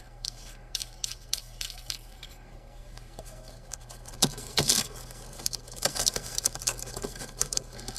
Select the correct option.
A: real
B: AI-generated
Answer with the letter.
B